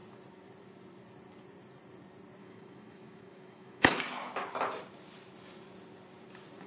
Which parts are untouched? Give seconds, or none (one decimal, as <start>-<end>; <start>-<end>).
0.0-2.4; 4.0-6.7